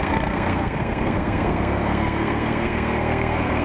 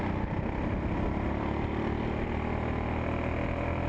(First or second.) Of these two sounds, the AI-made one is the first